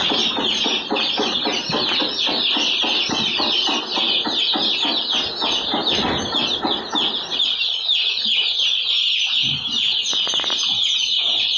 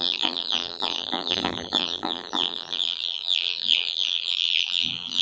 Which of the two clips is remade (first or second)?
second